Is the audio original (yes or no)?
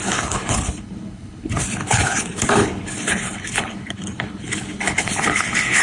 no